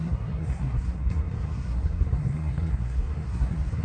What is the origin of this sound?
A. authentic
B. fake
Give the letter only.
B